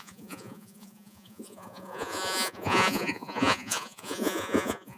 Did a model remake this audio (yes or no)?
yes